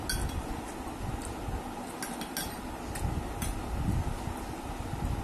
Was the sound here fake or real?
real